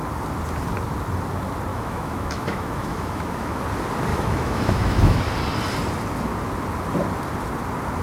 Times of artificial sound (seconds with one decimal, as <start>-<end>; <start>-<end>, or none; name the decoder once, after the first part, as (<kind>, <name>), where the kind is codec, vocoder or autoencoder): 1.7-3.6 (autoencoder, DAC-VAE); 4.1-5.2